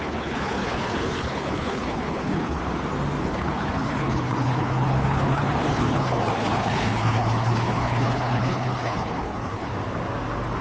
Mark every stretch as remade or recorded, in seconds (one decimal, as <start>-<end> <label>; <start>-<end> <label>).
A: 0.0-2.6 remade; 2.6-3.2 recorded; 3.2-9.7 remade; 9.7-10.6 recorded